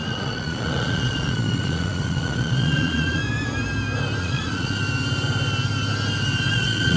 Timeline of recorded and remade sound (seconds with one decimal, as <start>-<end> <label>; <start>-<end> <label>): 0.0-3.2 remade; 3.2-4.2 recorded; 4.2-4.8 remade; 4.8-6.5 recorded; 6.5-7.0 remade